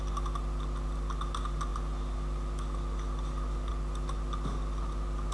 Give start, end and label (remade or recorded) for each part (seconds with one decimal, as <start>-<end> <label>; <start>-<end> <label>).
0.0-5.3 recorded